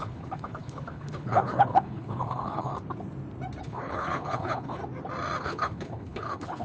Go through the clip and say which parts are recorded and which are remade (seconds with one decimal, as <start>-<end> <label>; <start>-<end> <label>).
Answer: 0.0-2.7 remade; 2.7-3.6 recorded; 3.6-4.8 remade; 4.8-5.4 recorded; 5.4-6.6 remade